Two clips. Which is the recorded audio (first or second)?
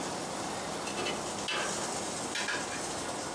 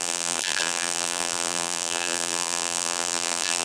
first